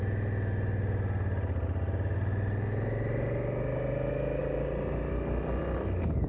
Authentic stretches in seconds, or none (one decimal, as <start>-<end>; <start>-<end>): 0.0-6.3

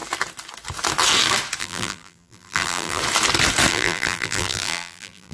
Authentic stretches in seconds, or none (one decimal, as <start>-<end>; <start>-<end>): 0.0-1.6; 3.0-3.7